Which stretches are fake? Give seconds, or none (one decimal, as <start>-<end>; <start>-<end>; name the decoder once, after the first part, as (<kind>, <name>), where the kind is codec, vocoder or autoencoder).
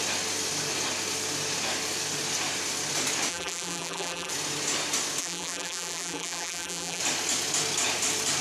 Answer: 3.3-4.3 (vocoder, BigVGAN v2); 5.2-7.0